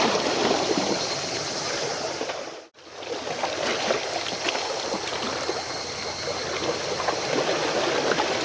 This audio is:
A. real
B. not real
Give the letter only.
A